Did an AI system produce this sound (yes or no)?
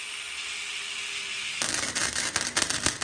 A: no